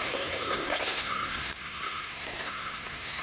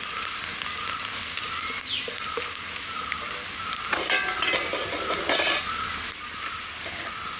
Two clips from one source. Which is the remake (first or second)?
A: first